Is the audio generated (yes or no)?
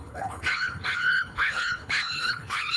yes